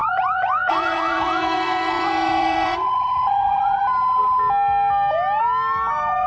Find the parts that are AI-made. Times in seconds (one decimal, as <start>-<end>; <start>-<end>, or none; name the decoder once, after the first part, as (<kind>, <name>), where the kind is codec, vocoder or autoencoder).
0.0-3.8 (vocoder, Vocos)